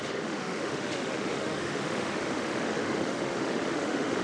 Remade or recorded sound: remade